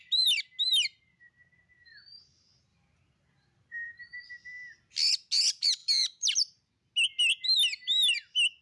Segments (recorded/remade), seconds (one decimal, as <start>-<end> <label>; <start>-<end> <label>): 0.0-2.7 recorded; 2.7-4.0 remade; 4.0-5.8 recorded; 5.8-6.7 remade; 6.7-8.6 recorded